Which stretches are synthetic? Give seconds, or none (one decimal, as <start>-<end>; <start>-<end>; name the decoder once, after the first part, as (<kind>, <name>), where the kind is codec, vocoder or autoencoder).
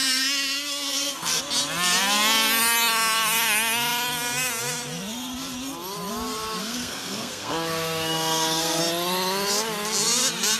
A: 0.0-1.4 (codec, SNAC); 6.6-8.8